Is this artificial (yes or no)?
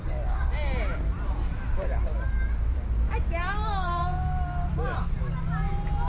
no